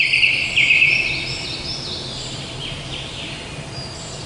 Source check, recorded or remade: recorded